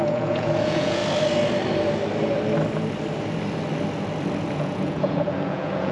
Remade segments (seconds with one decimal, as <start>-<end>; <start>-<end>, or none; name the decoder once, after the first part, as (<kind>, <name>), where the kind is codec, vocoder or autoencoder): 0.0-1.0 (vocoder, Vocos); 4.5-5.9